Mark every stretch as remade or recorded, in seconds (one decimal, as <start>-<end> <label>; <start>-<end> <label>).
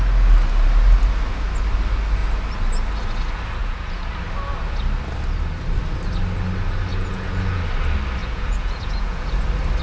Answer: 0.0-3.6 recorded; 3.6-4.1 remade; 4.1-6.9 recorded; 6.9-7.6 remade; 7.6-8.2 recorded; 8.2-9.3 remade; 9.3-9.8 recorded